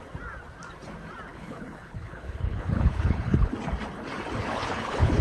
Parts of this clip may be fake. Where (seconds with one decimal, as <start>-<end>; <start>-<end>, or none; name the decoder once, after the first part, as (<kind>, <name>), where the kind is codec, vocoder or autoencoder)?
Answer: 1.3-3.5 (codec, HILCodec); 4.4-5.2